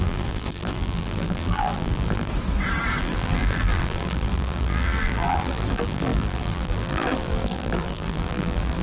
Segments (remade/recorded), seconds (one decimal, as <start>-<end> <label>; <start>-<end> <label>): 0.0-2.3 remade; 2.3-3.0 recorded; 3.0-8.8 remade